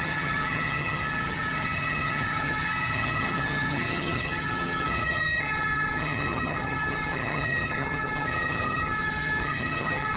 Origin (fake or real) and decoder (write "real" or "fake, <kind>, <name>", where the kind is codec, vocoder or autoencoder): fake, vocoder, HiFi-GAN